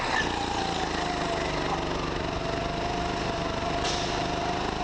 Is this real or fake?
real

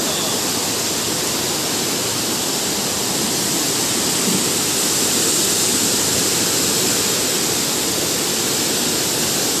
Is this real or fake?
real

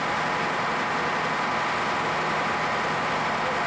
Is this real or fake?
real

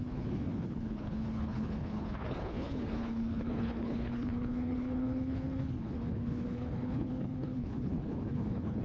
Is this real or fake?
fake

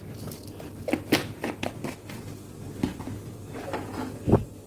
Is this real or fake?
real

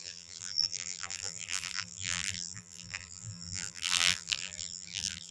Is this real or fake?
fake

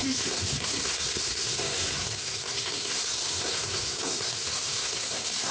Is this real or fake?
fake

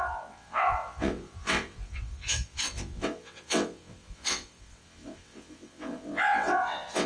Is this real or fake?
fake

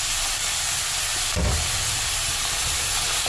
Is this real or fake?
real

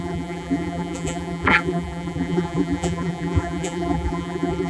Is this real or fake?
fake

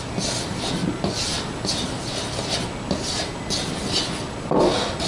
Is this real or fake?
real